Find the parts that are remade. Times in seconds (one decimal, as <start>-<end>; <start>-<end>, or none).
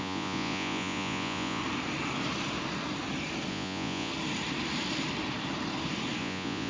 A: 0.0-1.6; 3.5-4.1; 6.2-6.7